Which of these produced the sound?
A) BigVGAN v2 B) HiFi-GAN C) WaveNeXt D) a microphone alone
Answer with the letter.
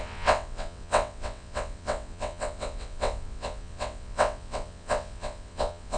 C